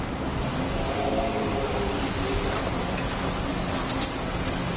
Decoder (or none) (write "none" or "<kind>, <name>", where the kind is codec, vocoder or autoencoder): none